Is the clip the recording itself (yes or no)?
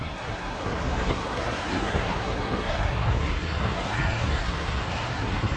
no